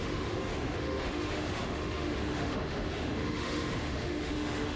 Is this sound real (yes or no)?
no